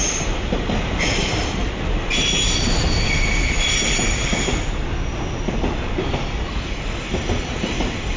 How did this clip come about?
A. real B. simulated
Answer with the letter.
A